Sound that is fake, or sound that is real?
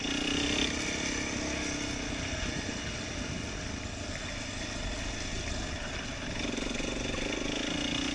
real